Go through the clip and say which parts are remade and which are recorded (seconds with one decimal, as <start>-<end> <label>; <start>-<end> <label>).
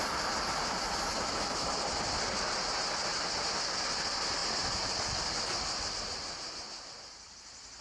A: 0.0-7.8 recorded